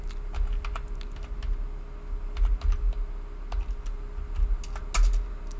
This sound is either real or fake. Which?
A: real